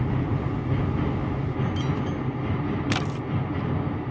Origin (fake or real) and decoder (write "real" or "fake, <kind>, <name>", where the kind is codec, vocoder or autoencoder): real